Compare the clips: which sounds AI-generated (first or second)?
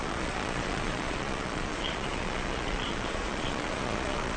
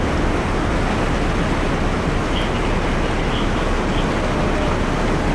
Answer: first